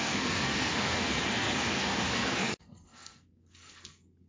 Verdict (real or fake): fake